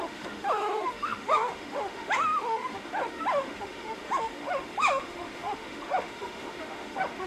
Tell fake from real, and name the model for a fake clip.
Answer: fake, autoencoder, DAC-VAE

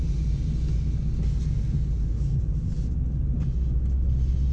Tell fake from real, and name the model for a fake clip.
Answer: real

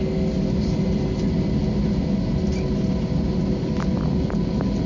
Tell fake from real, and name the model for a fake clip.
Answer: real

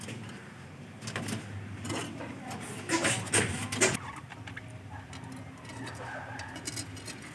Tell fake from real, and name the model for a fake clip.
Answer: fake, vocoder, BigVGAN v2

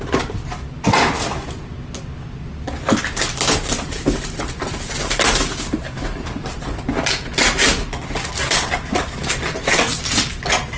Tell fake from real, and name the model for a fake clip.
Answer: real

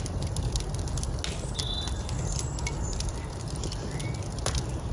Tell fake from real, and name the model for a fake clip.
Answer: real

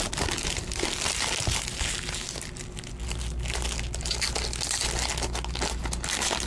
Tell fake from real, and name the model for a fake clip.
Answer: real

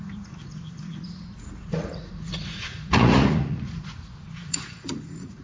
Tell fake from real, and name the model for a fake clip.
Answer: fake, vocoder, Vocos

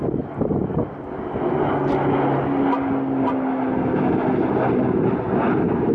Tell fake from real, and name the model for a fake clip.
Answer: real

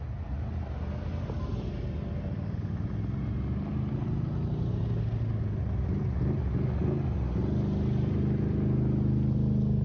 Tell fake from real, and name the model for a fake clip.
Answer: real